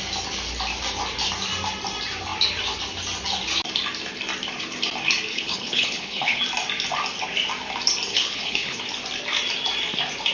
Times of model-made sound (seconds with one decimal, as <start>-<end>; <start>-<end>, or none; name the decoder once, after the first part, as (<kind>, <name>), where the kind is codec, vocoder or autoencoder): 5.3-6.4 (codec, HILCodec); 8.1-8.8

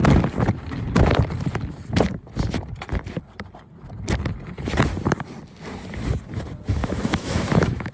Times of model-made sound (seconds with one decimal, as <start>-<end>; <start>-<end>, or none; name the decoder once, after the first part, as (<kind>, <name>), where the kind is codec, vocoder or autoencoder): 6.8-7.9 (autoencoder, DAC-VAE)

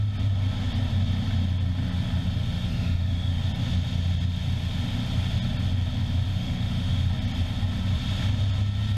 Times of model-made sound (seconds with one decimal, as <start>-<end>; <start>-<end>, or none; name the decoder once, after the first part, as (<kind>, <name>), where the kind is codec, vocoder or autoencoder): 2.7-3.4 (autoencoder, DAC-VAE); 6.3-7.1

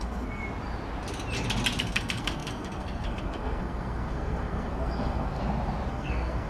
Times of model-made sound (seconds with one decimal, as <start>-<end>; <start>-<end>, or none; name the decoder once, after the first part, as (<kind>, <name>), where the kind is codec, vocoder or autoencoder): 0.0-0.4 (codec, SNAC); 1.8-5.4; 5.9-6.5

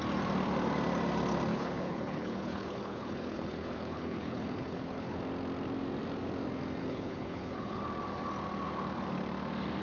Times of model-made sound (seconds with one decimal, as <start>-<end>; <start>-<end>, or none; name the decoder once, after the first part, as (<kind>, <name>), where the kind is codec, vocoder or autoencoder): 1.5-5.2 (codec, HILCodec); 6.8-7.8

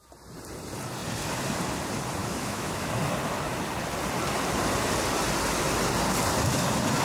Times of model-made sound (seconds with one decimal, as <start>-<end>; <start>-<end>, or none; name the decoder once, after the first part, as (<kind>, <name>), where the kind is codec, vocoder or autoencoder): 2.2-2.9 (autoencoder, DAC-VAE)

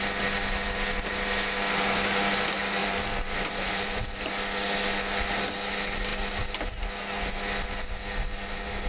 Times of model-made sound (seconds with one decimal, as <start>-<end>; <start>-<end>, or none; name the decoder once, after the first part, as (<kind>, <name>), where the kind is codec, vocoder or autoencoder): 2.8-4.0 (vocoder, BigVGAN v2)